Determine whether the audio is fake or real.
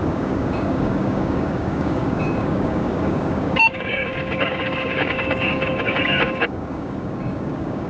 fake